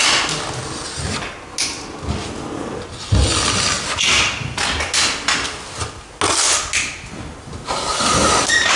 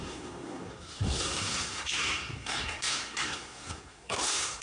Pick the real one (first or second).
first